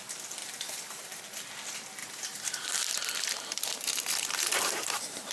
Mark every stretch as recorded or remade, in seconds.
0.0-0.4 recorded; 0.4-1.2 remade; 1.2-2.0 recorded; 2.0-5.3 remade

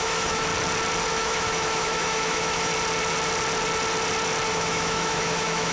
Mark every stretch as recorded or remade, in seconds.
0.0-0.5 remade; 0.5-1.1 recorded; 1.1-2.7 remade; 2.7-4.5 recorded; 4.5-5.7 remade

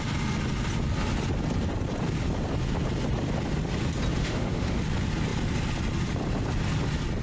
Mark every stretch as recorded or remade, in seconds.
0.0-4.2 recorded; 4.2-4.8 remade; 4.8-7.2 recorded

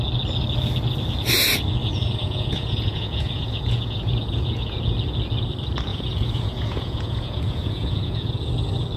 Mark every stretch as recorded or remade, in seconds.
0.0-1.8 recorded; 1.8-4.8 remade; 4.8-5.9 recorded; 5.9-8.3 remade; 8.3-9.0 recorded